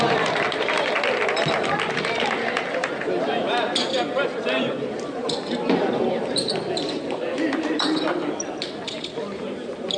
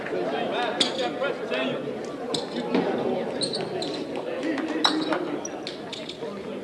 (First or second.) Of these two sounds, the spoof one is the first